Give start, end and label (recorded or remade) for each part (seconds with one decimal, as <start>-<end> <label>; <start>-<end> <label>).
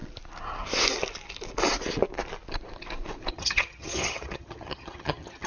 0.0-3.3 recorded; 3.3-5.5 remade